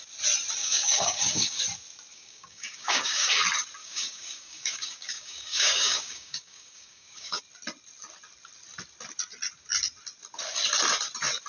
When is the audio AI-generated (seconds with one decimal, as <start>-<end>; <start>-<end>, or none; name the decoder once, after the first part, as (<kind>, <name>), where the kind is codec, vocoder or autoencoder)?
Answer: 0.6-1.6 (codec, DAC); 2.1-3.3; 3.8-7.4